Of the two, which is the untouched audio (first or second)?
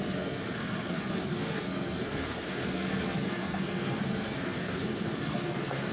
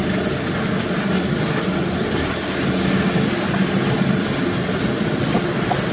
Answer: second